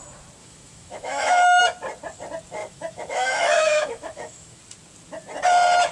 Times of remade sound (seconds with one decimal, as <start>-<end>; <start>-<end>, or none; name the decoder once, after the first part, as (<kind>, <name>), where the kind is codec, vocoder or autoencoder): 0.4-1.6 (autoencoder, DAC-VAE); 2.6-4.6